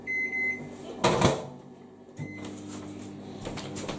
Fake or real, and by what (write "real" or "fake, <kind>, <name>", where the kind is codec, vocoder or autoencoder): real